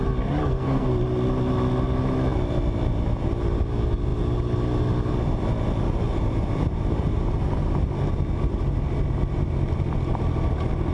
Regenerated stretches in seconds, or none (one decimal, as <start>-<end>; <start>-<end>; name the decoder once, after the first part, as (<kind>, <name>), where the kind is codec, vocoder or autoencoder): 0.4-0.9 (codec, SNAC)